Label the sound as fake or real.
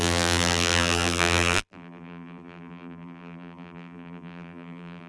fake